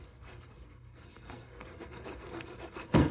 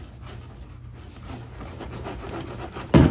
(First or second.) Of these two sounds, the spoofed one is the first